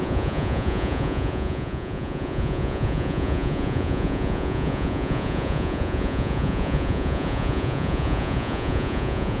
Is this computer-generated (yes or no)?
yes